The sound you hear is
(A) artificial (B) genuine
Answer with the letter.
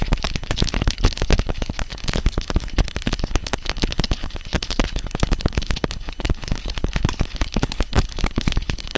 A